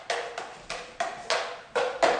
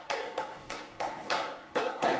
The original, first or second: first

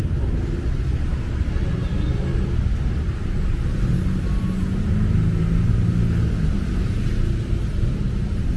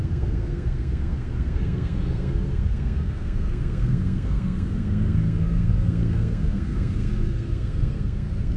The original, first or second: first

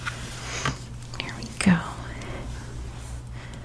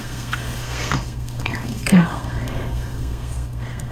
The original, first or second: first